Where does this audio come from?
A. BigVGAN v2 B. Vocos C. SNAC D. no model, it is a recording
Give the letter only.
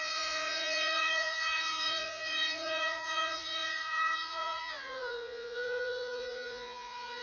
B